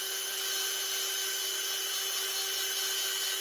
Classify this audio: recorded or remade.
recorded